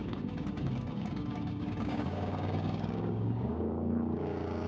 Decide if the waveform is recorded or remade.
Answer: remade